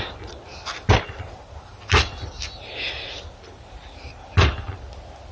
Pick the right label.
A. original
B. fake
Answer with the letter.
A